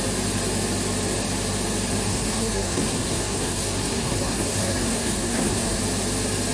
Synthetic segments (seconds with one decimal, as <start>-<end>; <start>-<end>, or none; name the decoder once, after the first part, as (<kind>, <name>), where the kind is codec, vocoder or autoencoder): 2.1-5.8 (codec, SNAC)